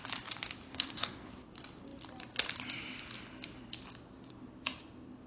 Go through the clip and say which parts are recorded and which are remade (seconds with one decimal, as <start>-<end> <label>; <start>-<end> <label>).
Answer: 0.0-0.7 recorded; 0.7-1.3 remade; 1.3-5.3 recorded